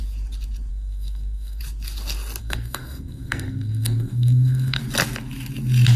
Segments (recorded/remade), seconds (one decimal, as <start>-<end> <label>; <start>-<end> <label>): 0.0-0.7 recorded; 0.7-1.6 remade; 1.6-2.4 recorded; 2.4-4.8 remade; 4.8-6.0 recorded

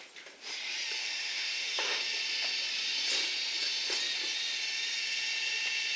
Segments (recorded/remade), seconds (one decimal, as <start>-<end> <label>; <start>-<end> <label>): 0.0-1.0 recorded; 1.0-2.0 remade; 2.0-6.0 recorded

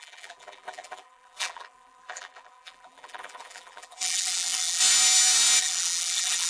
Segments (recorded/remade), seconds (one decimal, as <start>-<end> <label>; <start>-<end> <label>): 0.0-4.8 remade; 4.8-5.6 recorded; 5.6-6.5 remade

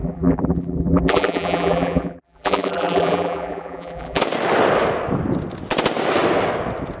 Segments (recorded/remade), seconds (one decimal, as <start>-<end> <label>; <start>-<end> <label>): 0.0-4.2 remade; 4.2-7.0 recorded